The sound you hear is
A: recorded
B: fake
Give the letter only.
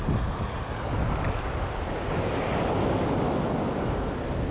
A